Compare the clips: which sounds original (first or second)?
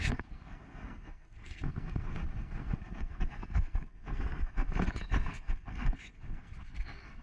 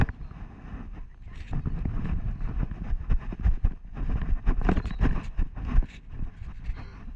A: second